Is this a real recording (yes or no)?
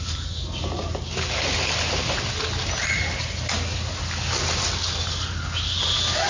yes